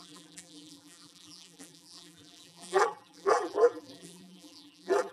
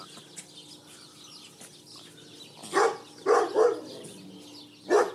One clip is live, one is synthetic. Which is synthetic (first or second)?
first